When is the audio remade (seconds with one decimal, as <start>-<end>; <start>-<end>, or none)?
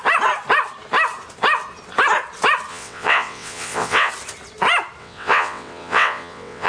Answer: 2.7-4.1; 5.0-6.7